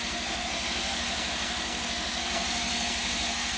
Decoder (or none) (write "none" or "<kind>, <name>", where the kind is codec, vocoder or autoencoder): codec, SNAC